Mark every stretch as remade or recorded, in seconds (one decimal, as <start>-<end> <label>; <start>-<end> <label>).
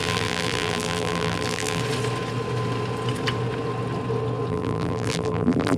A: 0.0-1.8 remade; 1.8-4.5 recorded; 4.5-5.8 remade